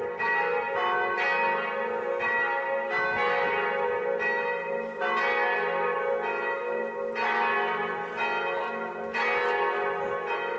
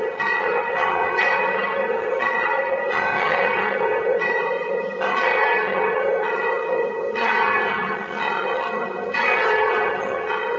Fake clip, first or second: second